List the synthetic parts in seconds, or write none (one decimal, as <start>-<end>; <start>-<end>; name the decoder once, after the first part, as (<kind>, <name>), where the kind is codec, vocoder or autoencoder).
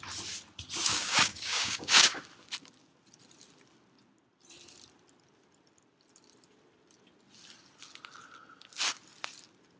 0.9-2.2 (codec, DAC)